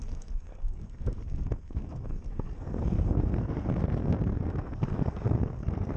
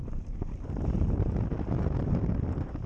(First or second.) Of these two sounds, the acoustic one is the second